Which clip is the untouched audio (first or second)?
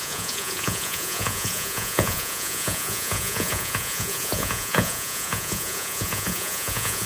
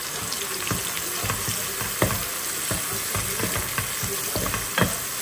second